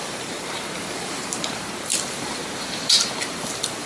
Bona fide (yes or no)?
no